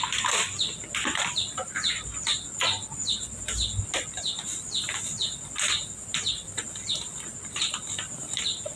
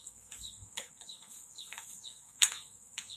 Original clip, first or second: first